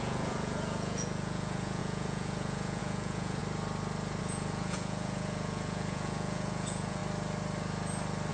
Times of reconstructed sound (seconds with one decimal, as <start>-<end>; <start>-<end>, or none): 0.0-3.4; 4.2-7.0